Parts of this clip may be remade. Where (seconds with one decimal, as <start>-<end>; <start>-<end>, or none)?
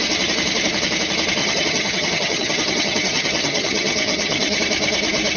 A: 1.4-4.6